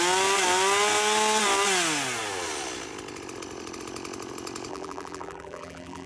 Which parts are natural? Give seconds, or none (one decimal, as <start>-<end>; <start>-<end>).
0.0-4.7